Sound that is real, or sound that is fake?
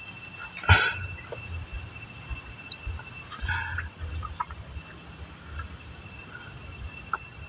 real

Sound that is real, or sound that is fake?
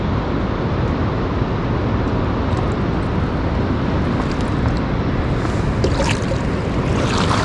real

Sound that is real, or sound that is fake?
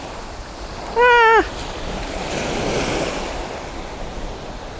real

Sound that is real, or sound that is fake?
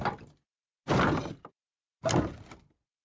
real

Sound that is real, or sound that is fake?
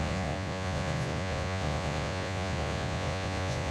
fake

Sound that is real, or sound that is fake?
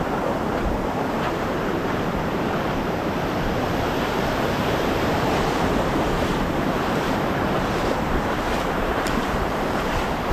fake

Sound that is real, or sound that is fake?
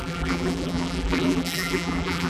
fake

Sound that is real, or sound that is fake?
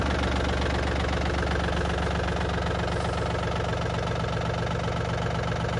real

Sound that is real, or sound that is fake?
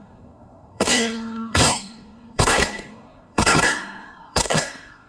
fake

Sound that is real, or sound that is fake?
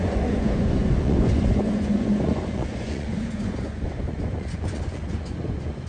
fake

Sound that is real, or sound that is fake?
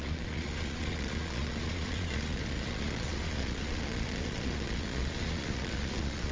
fake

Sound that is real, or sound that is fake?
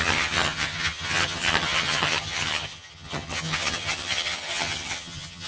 fake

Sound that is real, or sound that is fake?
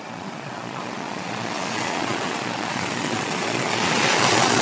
fake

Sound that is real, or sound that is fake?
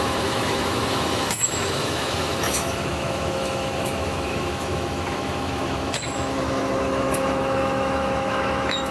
fake